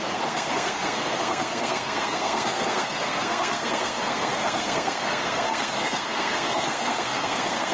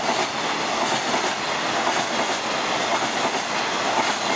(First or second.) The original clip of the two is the second